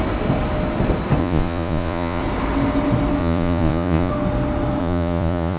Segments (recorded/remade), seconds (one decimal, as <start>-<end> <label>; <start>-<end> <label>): 0.0-1.2 recorded; 1.2-2.2 remade; 2.2-3.2 recorded; 3.2-4.1 remade; 4.1-4.8 recorded; 4.8-5.6 remade